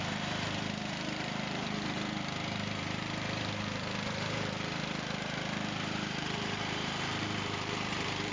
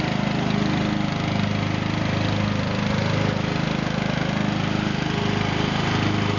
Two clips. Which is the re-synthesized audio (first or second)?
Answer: first